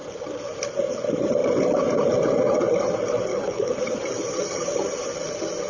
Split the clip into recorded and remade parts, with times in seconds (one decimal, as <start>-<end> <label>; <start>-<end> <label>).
0.0-3.3 recorded; 3.3-3.8 remade; 3.8-5.7 recorded